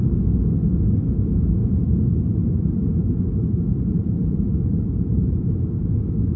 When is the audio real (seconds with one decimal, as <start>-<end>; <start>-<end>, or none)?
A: 0.0-1.6; 5.4-6.4